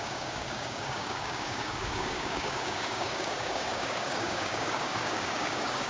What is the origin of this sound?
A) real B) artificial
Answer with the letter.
B